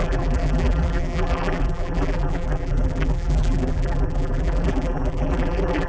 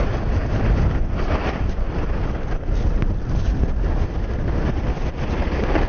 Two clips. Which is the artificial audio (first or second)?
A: first